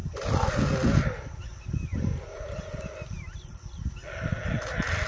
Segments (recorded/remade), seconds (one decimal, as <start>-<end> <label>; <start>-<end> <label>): 0.0-1.9 recorded; 1.9-2.8 remade; 2.8-3.3 recorded; 3.3-3.9 remade; 3.9-5.1 recorded